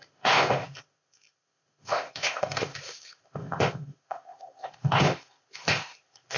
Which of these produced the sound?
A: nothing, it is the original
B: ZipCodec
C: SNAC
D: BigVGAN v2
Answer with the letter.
B